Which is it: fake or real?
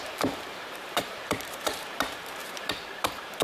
fake